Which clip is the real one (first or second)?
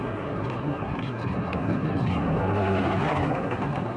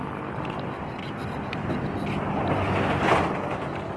second